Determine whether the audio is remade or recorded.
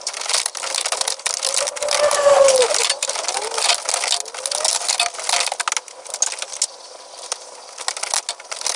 recorded